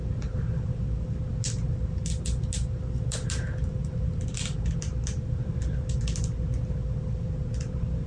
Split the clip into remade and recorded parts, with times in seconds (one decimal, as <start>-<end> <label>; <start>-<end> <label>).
0.0-8.1 recorded